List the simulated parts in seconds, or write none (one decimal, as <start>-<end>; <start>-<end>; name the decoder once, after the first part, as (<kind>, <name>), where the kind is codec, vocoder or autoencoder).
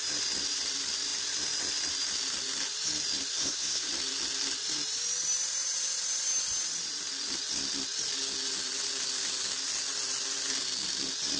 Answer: 3.3-3.9 (codec, SNAC)